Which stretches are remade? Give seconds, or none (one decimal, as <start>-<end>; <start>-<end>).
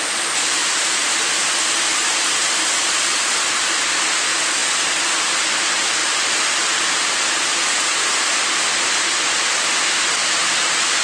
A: 6.0-7.1; 10.2-11.0